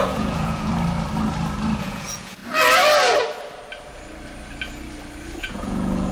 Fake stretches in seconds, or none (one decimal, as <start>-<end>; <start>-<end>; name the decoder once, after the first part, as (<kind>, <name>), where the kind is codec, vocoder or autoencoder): 0.0-0.7 (vocoder, Vocos); 1.8-2.4; 5.4-6.1